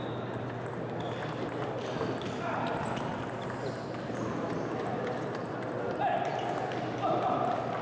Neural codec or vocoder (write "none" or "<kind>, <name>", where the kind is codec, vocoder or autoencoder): none